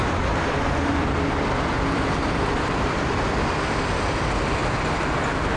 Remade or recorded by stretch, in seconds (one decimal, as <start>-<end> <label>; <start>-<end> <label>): 0.0-3.4 remade; 3.4-5.6 recorded